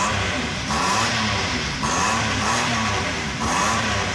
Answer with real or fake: fake